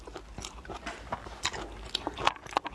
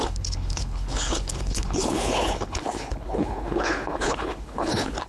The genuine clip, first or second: first